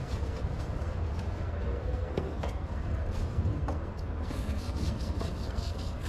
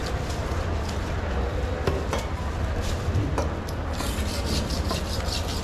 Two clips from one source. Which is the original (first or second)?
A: second